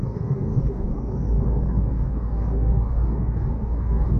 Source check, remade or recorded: remade